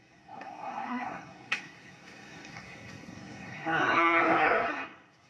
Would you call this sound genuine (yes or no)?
no